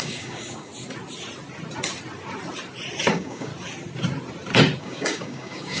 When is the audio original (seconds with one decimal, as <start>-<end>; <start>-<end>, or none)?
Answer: 0.7-3.1; 3.5-4.8